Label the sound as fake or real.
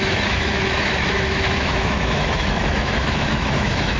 fake